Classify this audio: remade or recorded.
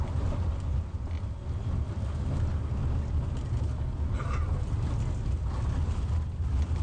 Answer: recorded